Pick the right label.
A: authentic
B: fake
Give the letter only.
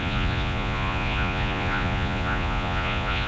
B